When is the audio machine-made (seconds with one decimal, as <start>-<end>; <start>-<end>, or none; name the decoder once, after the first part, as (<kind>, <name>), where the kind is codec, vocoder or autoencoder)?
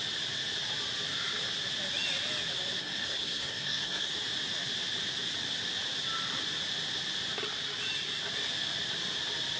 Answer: 2.8-4.1 (codec, SNAC)